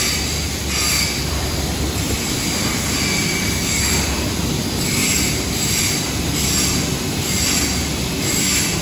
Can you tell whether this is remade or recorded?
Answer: remade